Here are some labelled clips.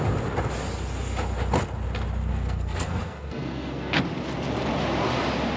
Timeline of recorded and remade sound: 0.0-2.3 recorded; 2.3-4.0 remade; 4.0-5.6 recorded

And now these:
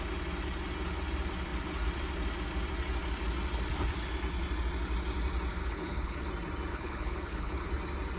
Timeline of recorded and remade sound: 0.0-5.6 recorded; 5.6-6.2 remade; 6.2-6.7 recorded; 6.7-7.7 remade; 7.7-8.2 recorded

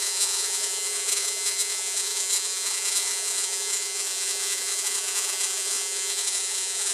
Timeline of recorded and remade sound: 0.0-6.9 remade

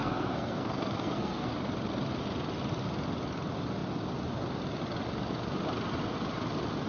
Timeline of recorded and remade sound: 0.0-1.5 remade; 1.5-6.9 recorded

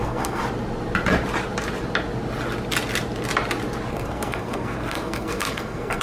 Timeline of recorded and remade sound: 0.0-0.4 remade; 0.4-3.9 recorded; 3.9-6.0 remade

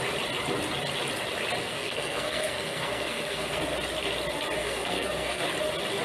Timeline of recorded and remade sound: 0.0-1.6 recorded; 1.6-3.6 remade; 3.6-4.6 recorded; 4.6-5.4 remade; 5.4-6.0 recorded

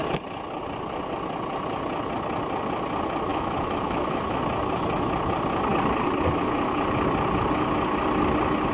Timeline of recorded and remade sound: 0.0-3.3 recorded; 3.3-4.4 remade; 4.4-8.7 recorded

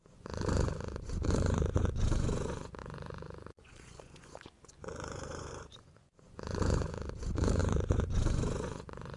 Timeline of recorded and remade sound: 0.0-9.2 remade